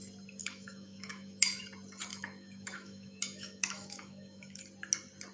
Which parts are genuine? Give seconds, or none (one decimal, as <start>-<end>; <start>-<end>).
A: 0.0-0.4; 1.6-2.1; 4.6-5.3